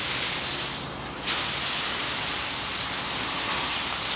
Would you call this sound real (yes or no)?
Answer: no